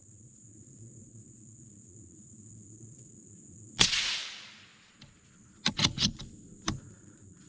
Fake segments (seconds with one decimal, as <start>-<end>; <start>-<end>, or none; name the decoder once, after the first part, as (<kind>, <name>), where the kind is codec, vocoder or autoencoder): 0.0-4.7 (vocoder, Vocos); 5.7-6.2; 6.9-7.5